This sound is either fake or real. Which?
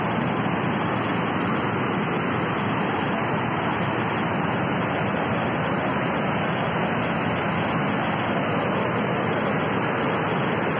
real